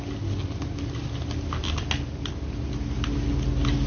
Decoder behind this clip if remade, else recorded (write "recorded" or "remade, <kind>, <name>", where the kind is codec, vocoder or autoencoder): recorded